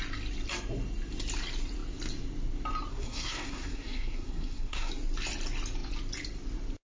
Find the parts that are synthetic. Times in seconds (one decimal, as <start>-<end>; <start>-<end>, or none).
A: 2.9-4.9